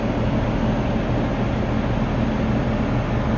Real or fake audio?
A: real